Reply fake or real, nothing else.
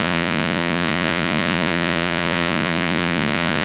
fake